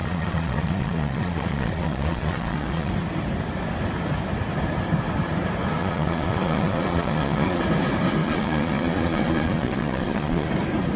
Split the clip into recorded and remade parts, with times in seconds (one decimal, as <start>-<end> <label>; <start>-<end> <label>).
0.0-2.9 remade; 2.9-5.8 recorded; 5.8-7.6 remade; 7.6-8.2 recorded; 8.2-10.5 remade; 10.5-11.0 recorded